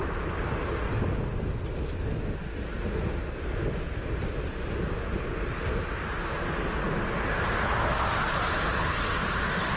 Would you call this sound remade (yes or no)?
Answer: no